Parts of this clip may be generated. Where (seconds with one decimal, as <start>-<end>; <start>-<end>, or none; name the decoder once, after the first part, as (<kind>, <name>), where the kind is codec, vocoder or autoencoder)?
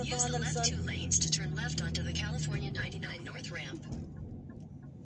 0.8-1.4 (codec, HILCodec); 2.7-3.4